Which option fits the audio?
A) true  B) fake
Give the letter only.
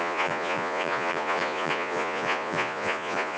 B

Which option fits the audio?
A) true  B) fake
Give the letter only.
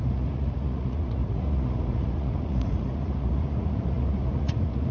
B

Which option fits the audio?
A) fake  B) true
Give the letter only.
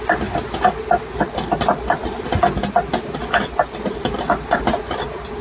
B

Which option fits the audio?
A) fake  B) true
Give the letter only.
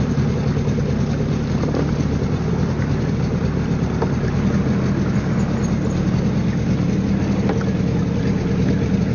B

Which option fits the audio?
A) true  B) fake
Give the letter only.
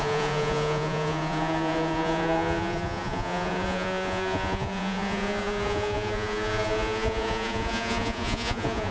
B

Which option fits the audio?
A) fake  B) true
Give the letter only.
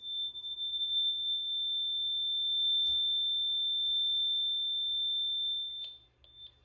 B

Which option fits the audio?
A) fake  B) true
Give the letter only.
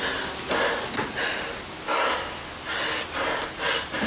B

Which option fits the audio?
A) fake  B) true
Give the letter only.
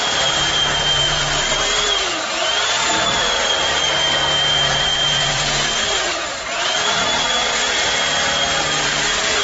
A